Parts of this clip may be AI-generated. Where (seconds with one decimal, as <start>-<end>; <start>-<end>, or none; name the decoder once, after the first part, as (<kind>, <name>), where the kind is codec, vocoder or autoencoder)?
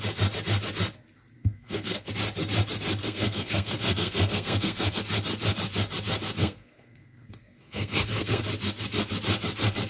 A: 1.4-2.1 (codec, SNAC); 3.0-5.0; 6.4-8.4